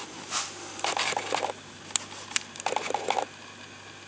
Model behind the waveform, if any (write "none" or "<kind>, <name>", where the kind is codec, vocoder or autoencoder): none